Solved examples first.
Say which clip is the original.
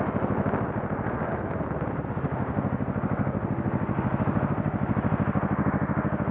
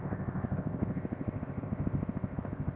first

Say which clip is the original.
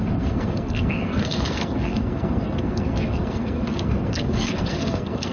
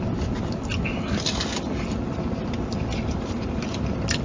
second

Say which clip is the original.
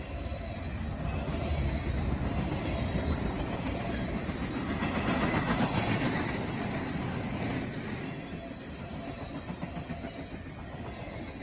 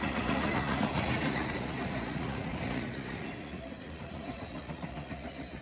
first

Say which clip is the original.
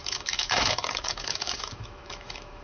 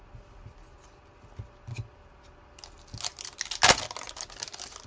second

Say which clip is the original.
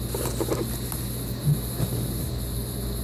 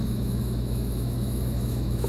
first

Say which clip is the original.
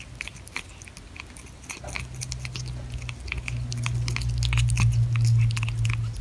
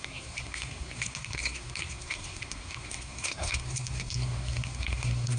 first